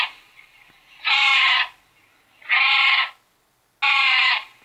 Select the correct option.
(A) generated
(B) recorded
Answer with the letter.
B